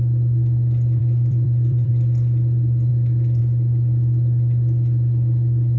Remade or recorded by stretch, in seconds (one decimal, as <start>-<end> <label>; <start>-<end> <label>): 0.0-1.0 recorded; 1.0-1.9 remade; 1.9-5.8 recorded